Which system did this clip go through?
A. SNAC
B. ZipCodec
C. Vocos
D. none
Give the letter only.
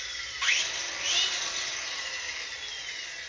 D